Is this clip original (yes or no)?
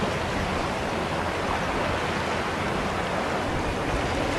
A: yes